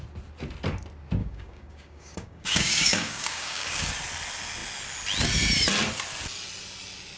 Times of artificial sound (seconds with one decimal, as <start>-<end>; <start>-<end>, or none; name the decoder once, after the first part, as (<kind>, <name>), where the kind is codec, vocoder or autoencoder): 1.2-3.9 (codec, DAC)